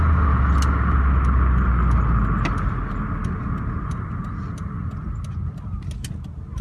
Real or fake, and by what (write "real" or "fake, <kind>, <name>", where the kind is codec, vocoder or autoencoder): real